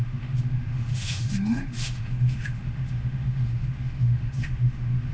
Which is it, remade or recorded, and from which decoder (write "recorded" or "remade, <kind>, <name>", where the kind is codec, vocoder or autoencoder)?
remade, autoencoder, DAC-VAE